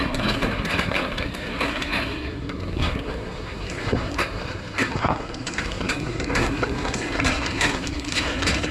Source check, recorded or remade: remade